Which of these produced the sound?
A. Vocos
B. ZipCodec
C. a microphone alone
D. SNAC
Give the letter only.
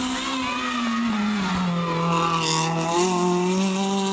C